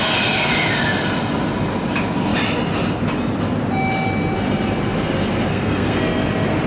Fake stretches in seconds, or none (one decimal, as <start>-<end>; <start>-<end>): 5.5-6.0